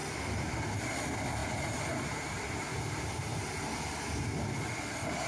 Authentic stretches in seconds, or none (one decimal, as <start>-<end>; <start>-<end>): 0.0-1.4; 3.7-5.3